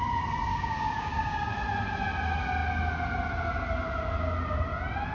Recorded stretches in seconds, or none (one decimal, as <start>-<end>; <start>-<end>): 0.0-0.5; 1.5-5.1